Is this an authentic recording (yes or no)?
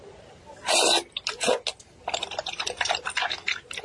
yes